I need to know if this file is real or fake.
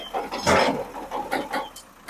real